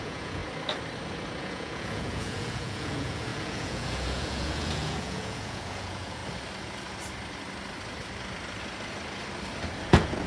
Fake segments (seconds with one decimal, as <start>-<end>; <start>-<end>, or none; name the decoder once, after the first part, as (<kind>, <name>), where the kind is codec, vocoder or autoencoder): 0.0-0.4 (vocoder, Vocos); 1.4-6.2; 9.9-10.3